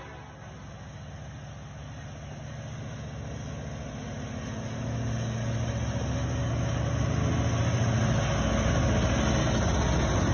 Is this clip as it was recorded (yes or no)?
yes